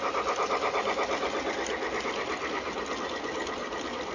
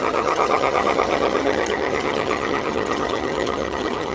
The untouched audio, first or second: first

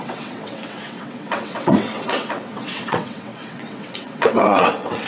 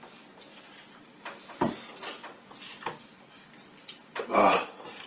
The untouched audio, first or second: second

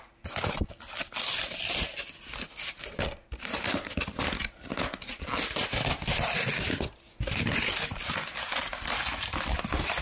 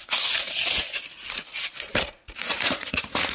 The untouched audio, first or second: first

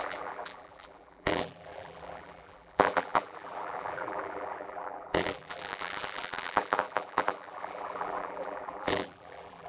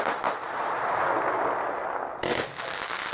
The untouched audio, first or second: second